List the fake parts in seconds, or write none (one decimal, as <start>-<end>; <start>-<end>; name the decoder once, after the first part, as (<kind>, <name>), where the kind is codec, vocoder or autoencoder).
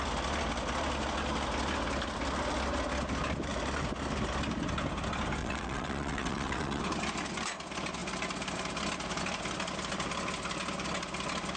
5.4-6.8 (vocoder, WaveNeXt)